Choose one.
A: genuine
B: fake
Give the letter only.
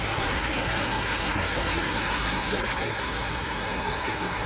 B